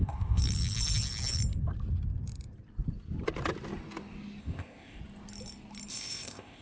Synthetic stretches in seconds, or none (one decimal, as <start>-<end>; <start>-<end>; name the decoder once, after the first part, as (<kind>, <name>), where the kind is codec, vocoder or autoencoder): 0.0-0.4 (codec, ZipCodec); 4.4-5.0; 5.9-6.6